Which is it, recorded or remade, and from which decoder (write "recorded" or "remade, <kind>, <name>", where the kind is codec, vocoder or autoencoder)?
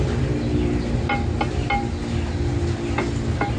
recorded